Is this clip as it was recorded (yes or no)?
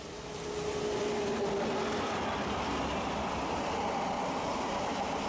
yes